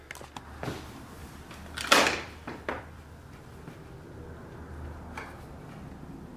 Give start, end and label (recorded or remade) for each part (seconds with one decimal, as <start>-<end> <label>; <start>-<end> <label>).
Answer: 0.0-1.2 recorded; 1.2-2.8 remade; 2.8-6.4 recorded